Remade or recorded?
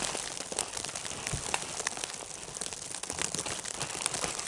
recorded